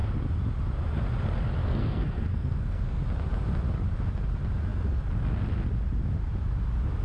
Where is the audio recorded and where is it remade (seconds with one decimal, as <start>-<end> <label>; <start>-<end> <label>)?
0.0-1.6 recorded; 1.6-3.0 remade; 3.0-7.0 recorded

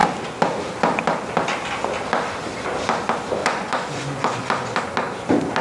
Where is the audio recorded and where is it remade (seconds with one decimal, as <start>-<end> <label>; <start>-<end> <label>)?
0.0-3.4 recorded; 3.4-4.8 remade; 4.8-5.6 recorded

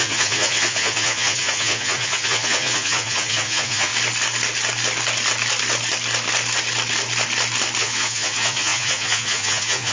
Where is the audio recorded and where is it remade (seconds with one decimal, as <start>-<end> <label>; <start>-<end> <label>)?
0.0-3.9 remade; 3.9-7.8 recorded; 7.8-9.9 remade

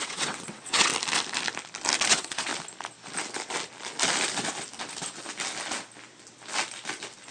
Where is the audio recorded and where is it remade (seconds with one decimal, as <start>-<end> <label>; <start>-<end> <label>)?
0.0-0.9 remade; 0.9-2.1 recorded; 2.1-2.5 remade; 2.5-7.3 recorded

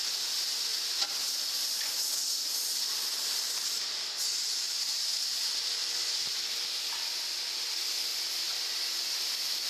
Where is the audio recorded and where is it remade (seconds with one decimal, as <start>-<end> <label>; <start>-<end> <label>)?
0.0-5.8 recorded; 5.8-6.8 remade; 6.8-8.1 recorded; 8.1-8.7 remade; 8.7-9.7 recorded

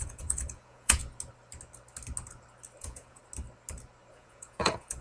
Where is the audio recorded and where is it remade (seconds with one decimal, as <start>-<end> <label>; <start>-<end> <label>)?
0.0-1.0 remade; 1.0-2.8 recorded; 2.8-3.2 remade; 3.2-4.1 recorded; 4.1-5.0 remade

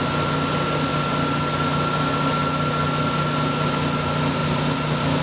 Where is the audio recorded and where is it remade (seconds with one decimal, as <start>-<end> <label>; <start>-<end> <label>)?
0.0-5.2 recorded